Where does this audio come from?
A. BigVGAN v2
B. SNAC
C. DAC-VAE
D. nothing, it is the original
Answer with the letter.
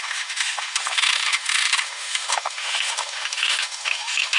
C